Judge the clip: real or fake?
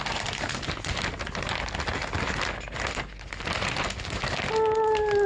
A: real